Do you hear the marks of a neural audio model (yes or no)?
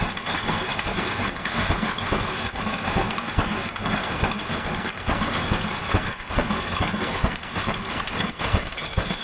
yes